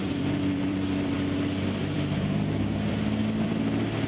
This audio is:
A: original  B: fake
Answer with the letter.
B